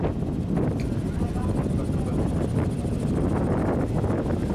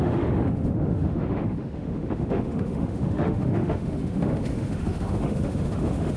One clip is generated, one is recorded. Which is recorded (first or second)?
first